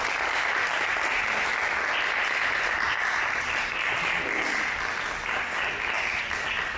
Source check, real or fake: real